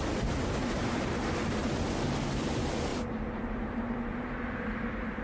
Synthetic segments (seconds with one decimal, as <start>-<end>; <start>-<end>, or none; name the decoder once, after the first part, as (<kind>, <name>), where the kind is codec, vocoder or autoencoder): 2.9-3.5 (vocoder, BigVGAN v2)